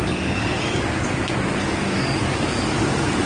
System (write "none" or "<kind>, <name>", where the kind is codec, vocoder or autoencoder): codec, DAC